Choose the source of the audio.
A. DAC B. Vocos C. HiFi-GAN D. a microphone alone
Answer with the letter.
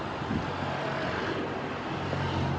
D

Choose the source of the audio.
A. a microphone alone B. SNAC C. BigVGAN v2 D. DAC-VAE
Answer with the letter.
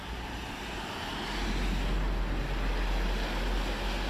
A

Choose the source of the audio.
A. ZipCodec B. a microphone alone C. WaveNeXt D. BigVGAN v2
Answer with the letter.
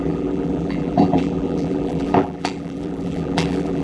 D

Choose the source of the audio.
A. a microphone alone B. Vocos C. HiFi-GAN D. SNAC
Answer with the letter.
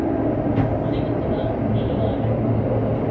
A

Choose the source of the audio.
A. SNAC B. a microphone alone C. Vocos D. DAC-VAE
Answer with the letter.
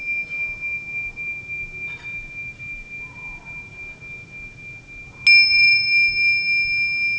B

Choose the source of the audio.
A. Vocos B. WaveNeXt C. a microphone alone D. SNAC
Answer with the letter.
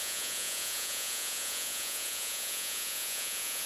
A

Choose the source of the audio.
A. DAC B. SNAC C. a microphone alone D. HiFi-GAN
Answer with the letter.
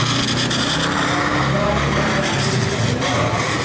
C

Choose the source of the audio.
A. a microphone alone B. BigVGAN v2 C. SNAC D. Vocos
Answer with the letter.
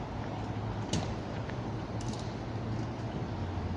A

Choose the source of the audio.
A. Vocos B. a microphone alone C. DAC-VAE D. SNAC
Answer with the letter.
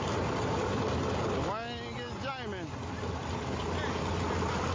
B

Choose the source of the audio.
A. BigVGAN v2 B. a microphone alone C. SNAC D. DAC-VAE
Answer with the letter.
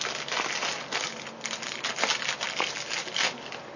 B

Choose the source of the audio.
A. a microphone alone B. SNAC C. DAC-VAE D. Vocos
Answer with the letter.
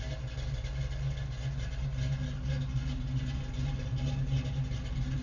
A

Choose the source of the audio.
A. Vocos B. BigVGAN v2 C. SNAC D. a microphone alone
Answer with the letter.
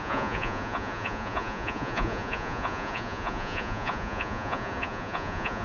A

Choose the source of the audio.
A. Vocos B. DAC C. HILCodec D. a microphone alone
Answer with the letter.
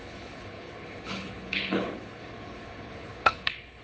C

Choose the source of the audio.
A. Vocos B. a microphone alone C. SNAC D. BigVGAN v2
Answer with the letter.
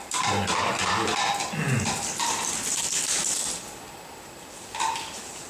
B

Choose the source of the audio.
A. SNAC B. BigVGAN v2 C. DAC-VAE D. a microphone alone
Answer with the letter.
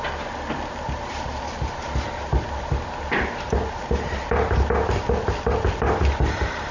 D